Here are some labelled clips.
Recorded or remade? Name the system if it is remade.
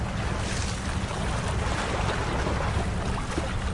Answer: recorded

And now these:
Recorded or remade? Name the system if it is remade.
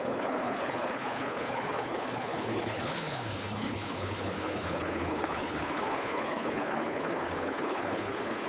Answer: remade, codec, HILCodec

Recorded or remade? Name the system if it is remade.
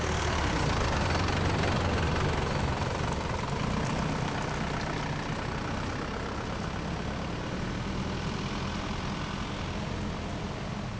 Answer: recorded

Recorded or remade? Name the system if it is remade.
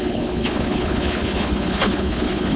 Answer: remade, codec, HILCodec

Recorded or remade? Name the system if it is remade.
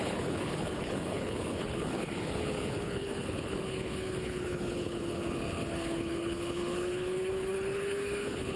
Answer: remade, codec, HILCodec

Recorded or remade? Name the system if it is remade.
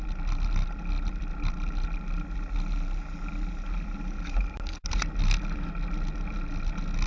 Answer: recorded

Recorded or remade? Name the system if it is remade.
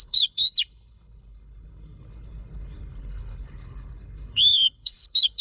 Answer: remade, codec, HILCodec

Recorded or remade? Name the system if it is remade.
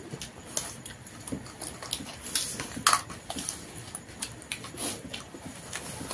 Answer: recorded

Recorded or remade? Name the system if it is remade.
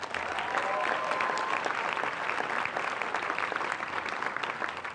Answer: recorded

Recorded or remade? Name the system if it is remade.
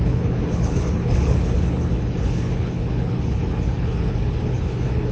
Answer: remade, codec, HILCodec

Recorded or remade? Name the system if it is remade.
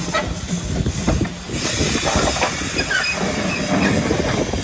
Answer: recorded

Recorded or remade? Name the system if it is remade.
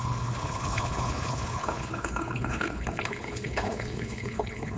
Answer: remade, codec, HILCodec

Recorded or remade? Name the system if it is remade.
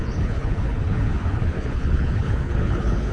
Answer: remade, codec, HILCodec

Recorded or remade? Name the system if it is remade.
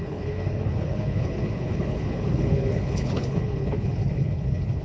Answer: remade, codec, HILCodec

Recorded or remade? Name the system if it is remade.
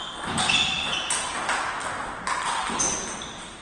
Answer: recorded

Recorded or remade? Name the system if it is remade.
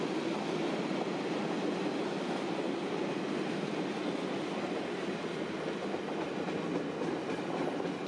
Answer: recorded